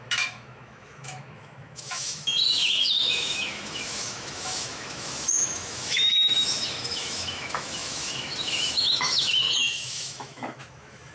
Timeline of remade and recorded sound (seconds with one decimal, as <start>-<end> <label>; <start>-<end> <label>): 0.0-11.1 remade